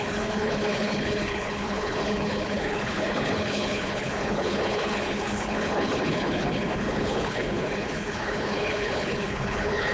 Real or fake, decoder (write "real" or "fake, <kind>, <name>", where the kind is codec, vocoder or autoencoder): fake, codec, HILCodec